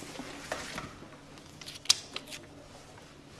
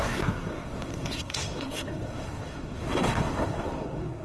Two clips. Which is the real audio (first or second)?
first